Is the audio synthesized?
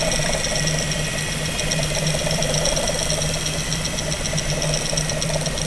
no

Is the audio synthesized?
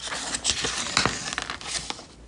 no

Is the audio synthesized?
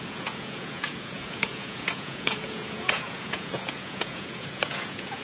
yes